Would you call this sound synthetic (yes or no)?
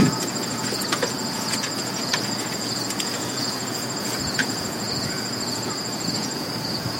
yes